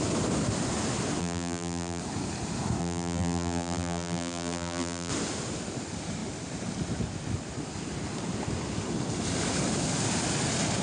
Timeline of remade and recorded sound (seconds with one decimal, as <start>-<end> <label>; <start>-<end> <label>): 0.0-1.2 recorded; 1.2-2.0 remade; 2.0-2.8 recorded; 2.8-5.1 remade; 5.1-10.8 recorded

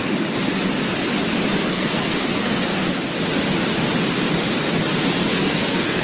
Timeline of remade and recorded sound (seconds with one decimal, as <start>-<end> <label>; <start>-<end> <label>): 0.0-1.7 recorded; 1.7-2.7 remade; 2.7-5.3 recorded; 5.3-6.0 remade

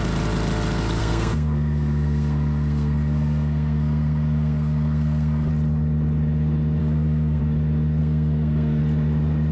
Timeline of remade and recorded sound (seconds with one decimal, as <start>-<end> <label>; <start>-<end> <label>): 0.0-1.0 recorded; 1.0-5.5 remade; 5.5-6.8 recorded; 6.8-7.4 remade; 7.4-8.0 recorded; 8.0-8.8 remade; 8.8-9.5 recorded

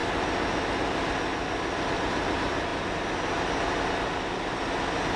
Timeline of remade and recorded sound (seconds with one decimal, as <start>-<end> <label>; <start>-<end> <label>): 0.0-5.2 recorded